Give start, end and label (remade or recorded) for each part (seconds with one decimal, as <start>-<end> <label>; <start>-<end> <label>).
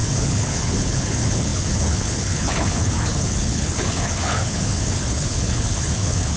0.0-6.4 remade